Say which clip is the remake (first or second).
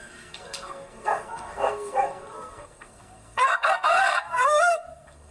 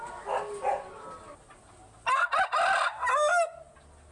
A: first